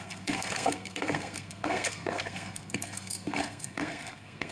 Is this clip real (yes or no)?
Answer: no